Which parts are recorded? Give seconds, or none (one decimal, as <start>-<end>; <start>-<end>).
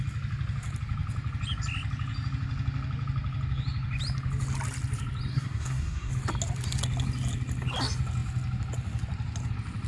0.0-5.3; 6.1-9.9